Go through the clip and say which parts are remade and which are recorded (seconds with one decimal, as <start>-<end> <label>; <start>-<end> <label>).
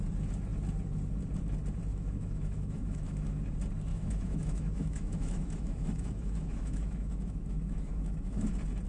0.0-1.9 recorded; 1.9-3.4 remade; 3.4-3.9 recorded; 3.9-8.5 remade; 8.5-8.9 recorded